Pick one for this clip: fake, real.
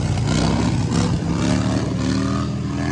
real